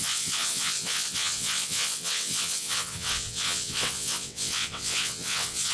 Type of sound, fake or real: fake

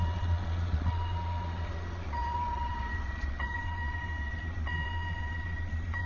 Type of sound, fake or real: fake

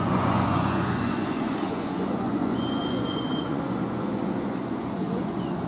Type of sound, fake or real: fake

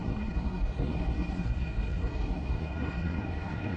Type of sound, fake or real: fake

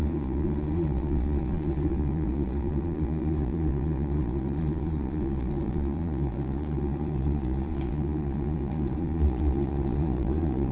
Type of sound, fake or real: fake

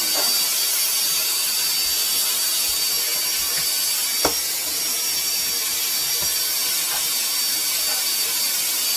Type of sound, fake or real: real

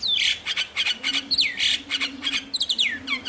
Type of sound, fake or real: fake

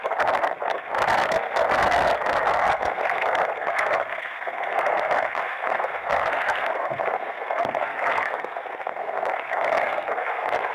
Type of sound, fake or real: fake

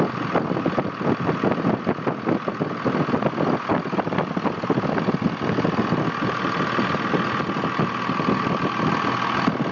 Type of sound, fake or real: real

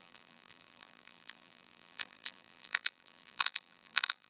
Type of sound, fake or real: fake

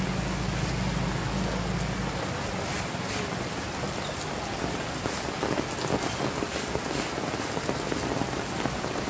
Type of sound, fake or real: real